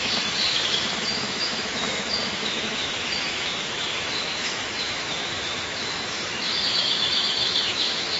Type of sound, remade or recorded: remade